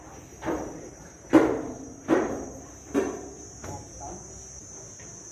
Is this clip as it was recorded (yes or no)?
no